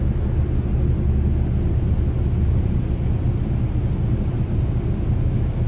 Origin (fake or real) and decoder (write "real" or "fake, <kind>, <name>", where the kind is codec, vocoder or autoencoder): real